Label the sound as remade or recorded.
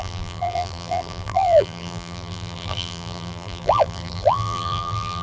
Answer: remade